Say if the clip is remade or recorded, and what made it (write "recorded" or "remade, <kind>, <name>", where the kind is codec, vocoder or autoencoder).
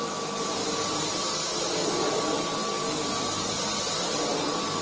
recorded